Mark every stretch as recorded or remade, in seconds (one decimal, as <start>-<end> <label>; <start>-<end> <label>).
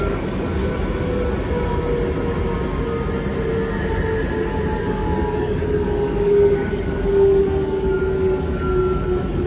0.0-0.6 remade; 0.6-4.8 recorded; 4.8-9.5 remade